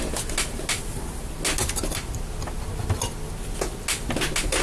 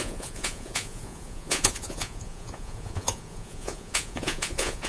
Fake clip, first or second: second